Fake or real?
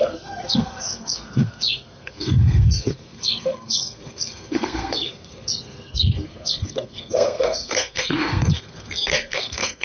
fake